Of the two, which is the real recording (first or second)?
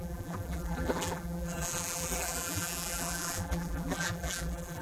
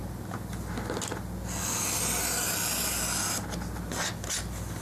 second